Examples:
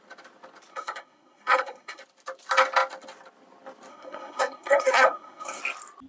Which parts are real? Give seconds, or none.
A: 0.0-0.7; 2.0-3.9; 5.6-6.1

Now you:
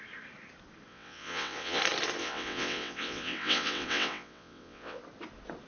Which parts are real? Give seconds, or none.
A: 0.0-0.9; 1.8-2.2; 5.0-5.7

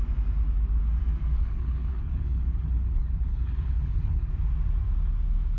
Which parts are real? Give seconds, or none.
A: 0.0-1.4; 4.3-5.6

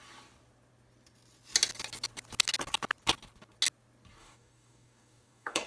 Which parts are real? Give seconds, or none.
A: 0.0-4.2

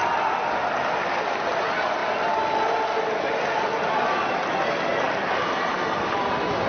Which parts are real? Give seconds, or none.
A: 0.0-2.0; 2.6-4.9; 5.7-6.7

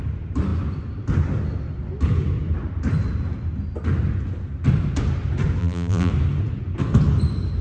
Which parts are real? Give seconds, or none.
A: 0.0-5.6; 6.1-7.6

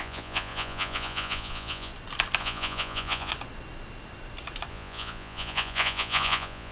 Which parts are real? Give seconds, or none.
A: 1.9-2.4; 3.3-4.7